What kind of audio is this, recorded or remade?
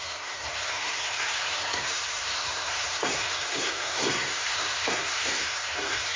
remade